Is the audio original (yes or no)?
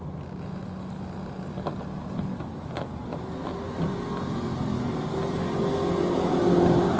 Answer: yes